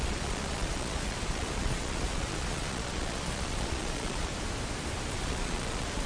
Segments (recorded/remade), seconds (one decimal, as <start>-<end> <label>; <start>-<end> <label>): 0.0-4.3 remade; 4.3-5.1 recorded; 5.1-6.1 remade